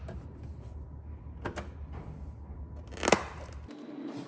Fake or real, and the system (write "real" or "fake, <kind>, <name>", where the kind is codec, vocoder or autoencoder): real